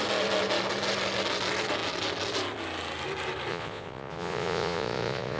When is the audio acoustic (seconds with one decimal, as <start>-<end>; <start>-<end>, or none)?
0.0-3.5